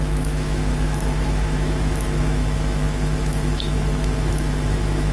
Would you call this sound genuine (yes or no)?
no